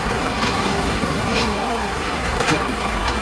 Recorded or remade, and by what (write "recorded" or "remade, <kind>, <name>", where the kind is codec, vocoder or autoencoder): remade, codec, SNAC